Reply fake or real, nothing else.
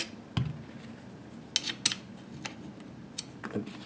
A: real